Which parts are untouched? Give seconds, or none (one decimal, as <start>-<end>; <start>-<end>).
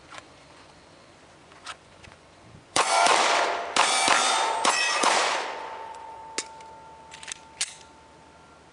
3.1-4.3; 6.2-8.7